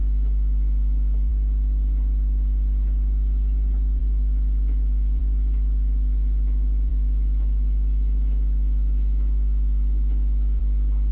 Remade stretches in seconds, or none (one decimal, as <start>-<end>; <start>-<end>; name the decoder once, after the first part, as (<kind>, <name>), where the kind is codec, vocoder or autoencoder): 0.0-1.3 (autoencoder, DAC-VAE); 4.0-5.2; 6.9-10.6

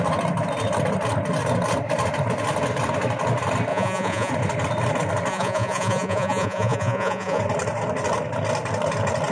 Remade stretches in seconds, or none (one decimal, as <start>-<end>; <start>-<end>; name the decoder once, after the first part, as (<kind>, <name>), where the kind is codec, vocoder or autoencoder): 3.7-4.3 (vocoder, Vocos); 5.3-7.4

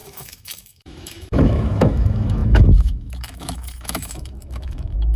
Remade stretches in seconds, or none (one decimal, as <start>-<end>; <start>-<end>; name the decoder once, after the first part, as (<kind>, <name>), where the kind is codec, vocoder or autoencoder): 0.0-5.2 (autoencoder, DAC-VAE)

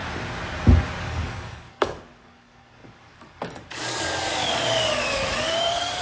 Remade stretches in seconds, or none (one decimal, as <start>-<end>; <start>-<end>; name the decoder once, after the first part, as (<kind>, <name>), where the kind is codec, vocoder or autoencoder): 1.0-6.0 (codec, DAC)

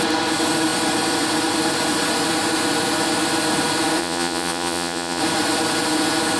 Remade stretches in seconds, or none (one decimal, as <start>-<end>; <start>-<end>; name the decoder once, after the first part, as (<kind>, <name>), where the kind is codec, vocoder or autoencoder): 4.0-5.2 (vocoder, Vocos)